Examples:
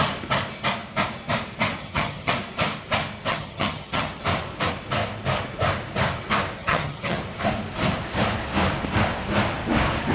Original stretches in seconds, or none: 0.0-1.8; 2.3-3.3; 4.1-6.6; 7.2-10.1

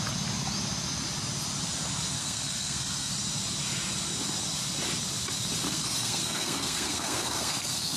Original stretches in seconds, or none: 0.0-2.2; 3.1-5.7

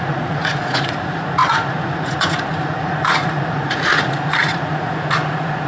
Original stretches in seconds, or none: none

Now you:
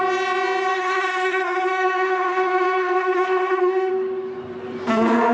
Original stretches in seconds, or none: 0.0-0.7; 3.9-5.3